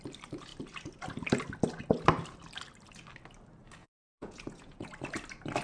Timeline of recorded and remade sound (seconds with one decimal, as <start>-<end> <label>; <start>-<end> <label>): 0.0-3.8 recorded; 3.8-4.9 remade; 4.9-5.6 recorded